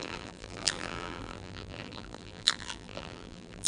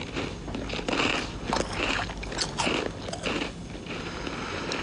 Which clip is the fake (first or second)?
first